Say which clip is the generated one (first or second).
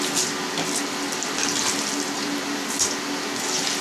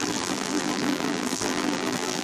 second